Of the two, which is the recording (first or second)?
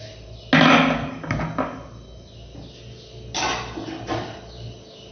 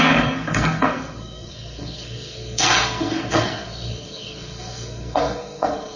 first